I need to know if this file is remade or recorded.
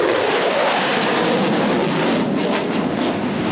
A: remade